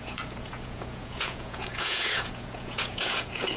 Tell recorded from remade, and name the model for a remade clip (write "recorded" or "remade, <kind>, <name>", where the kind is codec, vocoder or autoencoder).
remade, vocoder, Vocos